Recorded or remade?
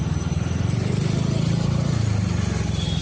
recorded